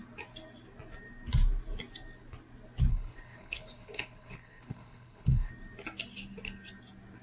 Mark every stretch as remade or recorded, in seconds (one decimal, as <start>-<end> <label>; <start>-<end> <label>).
0.0-2.9 recorded; 2.9-5.5 remade; 5.5-7.2 recorded